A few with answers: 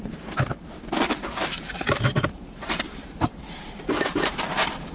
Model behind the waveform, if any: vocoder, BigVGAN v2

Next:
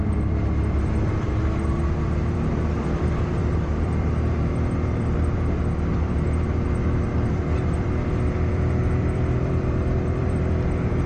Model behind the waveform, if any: vocoder, BigVGAN v2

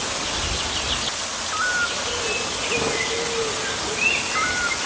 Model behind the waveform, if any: none